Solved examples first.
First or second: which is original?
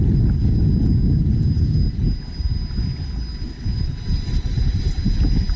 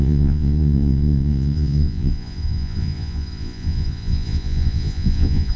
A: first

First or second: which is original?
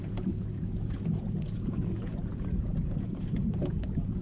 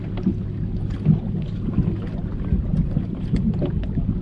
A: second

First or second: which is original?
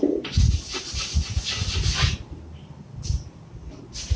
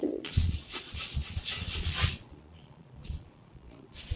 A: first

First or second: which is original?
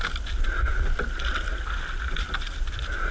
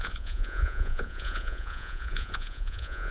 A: first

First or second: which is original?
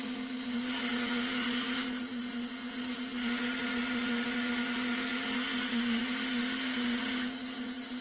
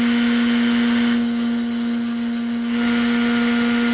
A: second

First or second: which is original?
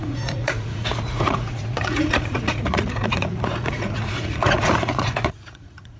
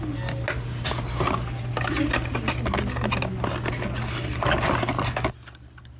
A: second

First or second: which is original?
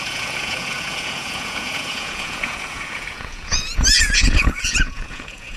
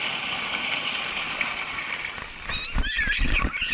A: second